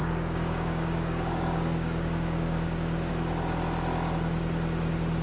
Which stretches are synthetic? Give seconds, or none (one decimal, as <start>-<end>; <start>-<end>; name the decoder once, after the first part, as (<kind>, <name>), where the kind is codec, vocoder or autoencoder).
0.0-3.1 (codec, DAC)

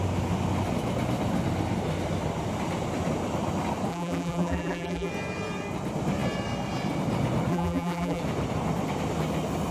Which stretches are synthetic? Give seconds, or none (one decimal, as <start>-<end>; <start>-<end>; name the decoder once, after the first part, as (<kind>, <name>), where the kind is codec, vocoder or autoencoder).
3.9-5.1 (vocoder, BigVGAN v2); 7.5-8.2

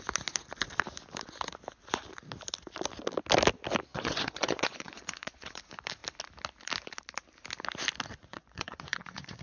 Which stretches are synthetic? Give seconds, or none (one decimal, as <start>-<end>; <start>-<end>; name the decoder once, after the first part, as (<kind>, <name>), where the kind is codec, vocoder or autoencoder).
3.9-5.6 (vocoder, Vocos); 8.2-9.4

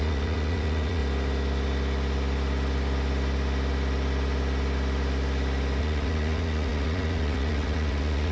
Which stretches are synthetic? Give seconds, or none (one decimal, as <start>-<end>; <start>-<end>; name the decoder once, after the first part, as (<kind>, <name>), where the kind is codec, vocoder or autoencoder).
0.0-1.0 (vocoder, Vocos); 5.8-8.3